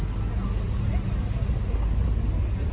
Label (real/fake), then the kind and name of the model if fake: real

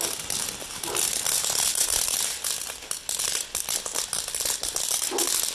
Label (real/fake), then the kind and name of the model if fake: real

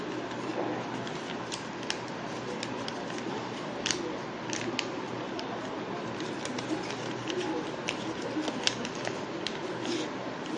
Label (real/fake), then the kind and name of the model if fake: real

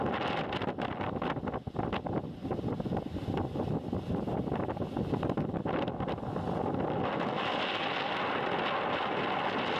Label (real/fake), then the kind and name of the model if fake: real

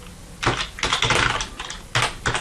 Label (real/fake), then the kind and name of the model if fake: real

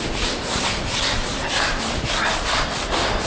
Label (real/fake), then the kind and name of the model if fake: fake, vocoder, BigVGAN v2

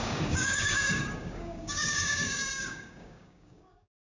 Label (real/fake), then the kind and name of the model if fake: fake, codec, DAC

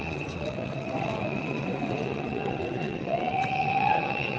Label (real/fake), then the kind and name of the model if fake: fake, vocoder, WaveNeXt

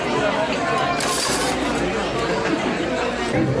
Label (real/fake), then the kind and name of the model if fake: real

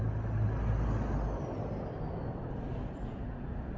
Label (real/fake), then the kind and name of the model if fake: real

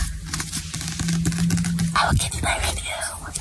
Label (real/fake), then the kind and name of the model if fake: real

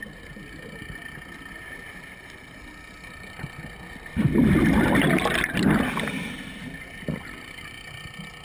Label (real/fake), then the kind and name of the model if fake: real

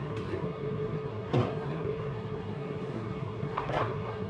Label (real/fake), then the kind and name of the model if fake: fake, codec, SNAC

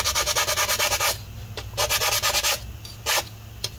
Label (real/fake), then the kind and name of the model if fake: real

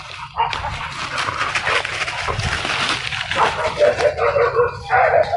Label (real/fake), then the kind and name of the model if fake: real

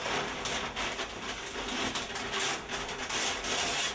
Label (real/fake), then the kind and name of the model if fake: real